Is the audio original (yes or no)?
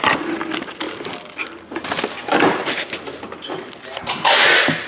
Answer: yes